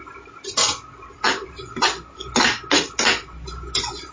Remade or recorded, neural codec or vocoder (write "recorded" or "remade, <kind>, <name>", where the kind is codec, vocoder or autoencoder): recorded